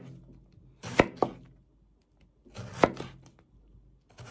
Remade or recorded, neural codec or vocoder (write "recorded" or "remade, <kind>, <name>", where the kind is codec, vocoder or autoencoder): recorded